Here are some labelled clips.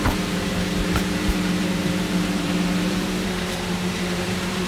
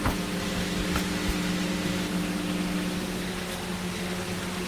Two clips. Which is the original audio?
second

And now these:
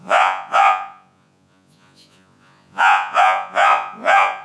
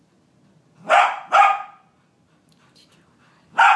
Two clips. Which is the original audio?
second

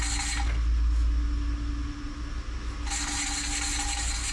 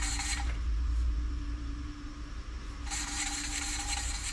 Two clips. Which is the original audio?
first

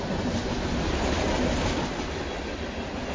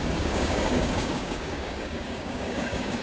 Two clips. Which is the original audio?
first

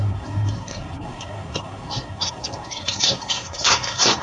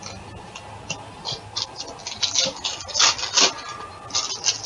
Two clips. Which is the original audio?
second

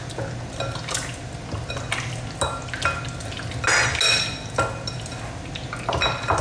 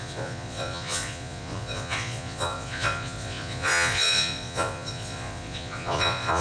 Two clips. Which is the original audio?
first